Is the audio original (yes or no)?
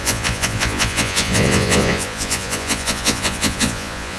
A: no